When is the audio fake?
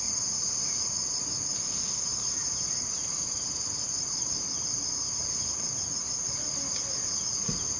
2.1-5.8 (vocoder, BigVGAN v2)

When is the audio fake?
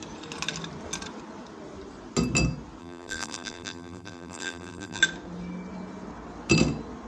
2.8-5.0 (vocoder, BigVGAN v2)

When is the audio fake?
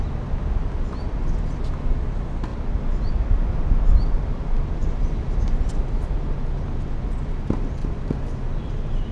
7.8-9.1 (vocoder, BigVGAN v2)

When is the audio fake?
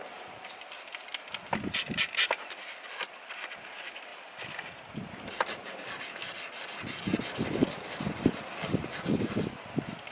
4.1-6.0 (vocoder, BigVGAN v2); 7.1-8.0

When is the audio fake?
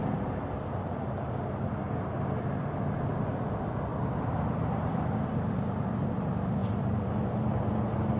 none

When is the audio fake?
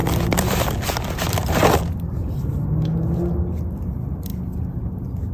none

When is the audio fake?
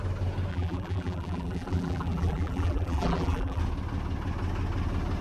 0.5-3.6 (vocoder, BigVGAN v2)